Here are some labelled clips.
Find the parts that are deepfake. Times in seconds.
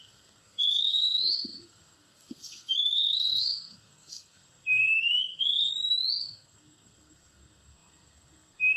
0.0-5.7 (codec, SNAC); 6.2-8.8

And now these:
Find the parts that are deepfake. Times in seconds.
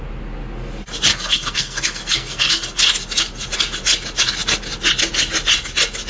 1.1-2.8 (codec, SNAC)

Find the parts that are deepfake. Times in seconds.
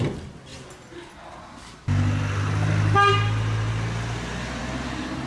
none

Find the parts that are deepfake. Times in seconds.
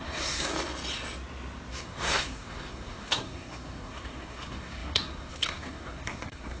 0.0-0.5 (codec, SNAC); 1.7-6.6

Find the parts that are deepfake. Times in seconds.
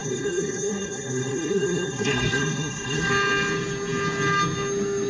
0.0-3.1 (codec, SNAC)